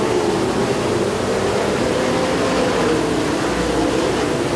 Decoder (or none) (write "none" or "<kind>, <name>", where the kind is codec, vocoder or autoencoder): none